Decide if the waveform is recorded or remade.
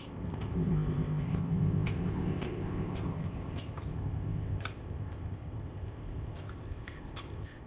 remade